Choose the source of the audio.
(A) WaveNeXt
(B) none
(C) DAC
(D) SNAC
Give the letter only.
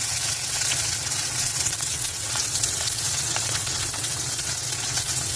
A